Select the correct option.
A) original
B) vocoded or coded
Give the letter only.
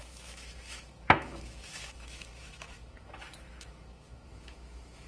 B